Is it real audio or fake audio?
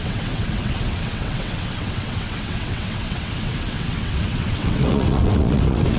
fake